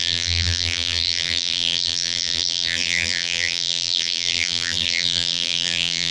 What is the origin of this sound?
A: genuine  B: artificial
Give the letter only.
B